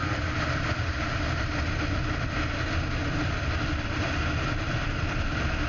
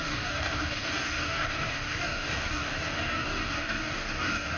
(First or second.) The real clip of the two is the first